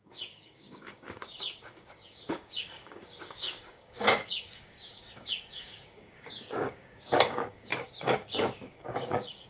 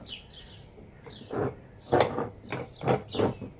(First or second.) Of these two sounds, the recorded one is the second